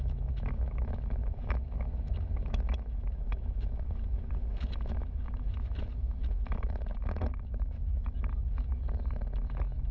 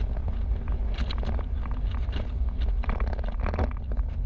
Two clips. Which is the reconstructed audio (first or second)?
first